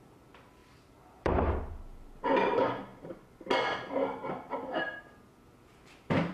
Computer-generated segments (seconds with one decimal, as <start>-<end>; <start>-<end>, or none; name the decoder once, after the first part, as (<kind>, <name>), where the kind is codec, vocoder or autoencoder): 0.6-2.2 (vocoder, BigVGAN v2)